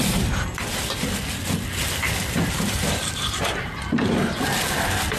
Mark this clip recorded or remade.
remade